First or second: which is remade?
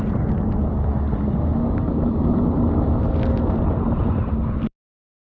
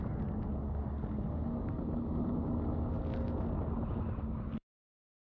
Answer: first